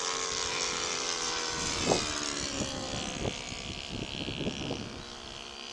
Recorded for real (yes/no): yes